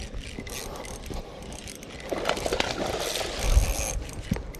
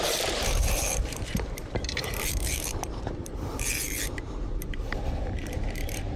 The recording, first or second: first